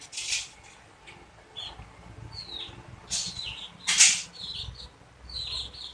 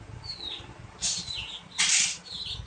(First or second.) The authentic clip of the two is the first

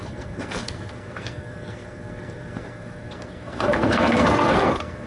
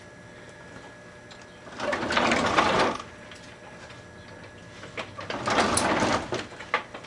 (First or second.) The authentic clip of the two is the second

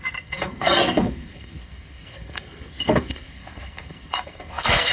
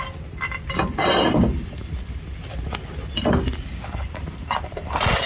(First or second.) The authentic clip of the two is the second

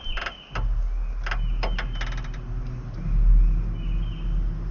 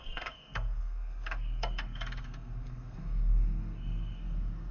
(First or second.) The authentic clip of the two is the first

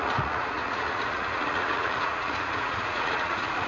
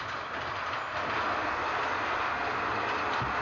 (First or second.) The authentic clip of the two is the second